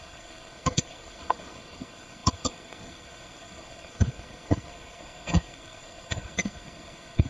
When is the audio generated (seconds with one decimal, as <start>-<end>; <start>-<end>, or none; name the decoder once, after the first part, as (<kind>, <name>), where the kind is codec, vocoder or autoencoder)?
0.0-7.3 (codec, SNAC)